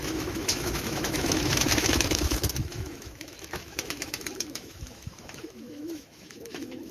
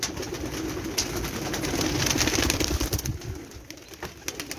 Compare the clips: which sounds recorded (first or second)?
second